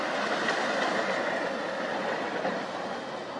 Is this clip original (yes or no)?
yes